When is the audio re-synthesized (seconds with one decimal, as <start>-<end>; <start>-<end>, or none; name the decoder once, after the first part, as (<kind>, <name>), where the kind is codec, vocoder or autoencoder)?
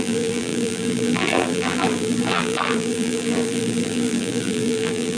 0.0-5.2 (vocoder, BigVGAN v2)